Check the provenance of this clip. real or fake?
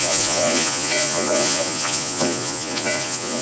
fake